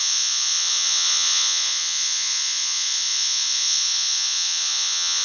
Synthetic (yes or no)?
yes